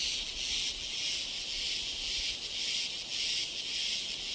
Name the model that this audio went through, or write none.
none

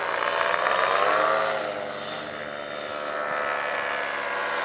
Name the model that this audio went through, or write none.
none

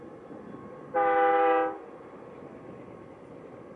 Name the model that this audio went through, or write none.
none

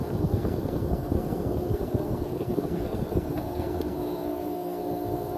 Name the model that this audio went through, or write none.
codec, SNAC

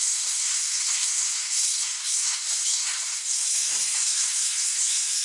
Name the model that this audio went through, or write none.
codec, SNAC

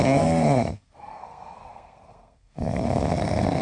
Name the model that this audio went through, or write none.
codec, SNAC